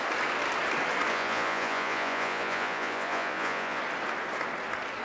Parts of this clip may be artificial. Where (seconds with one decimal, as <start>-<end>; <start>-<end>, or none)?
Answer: 1.1-3.8